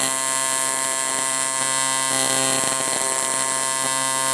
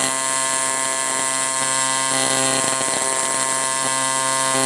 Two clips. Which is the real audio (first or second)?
first